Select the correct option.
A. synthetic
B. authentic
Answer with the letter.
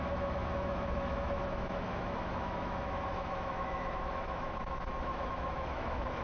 A